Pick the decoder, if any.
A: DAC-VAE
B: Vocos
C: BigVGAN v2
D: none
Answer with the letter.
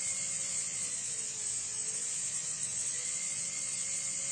B